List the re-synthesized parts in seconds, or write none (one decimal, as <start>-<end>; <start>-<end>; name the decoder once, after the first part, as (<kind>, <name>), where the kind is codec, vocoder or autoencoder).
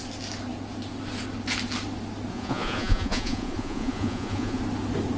2.3-4.6 (vocoder, Vocos)